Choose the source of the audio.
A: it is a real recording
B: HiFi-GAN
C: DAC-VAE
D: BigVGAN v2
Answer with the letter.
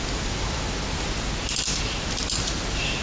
A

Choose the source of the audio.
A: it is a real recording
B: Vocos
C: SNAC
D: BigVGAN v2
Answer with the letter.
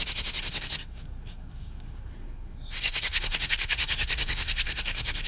C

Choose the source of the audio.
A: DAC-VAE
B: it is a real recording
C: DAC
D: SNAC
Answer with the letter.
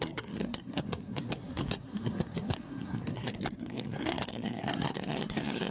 D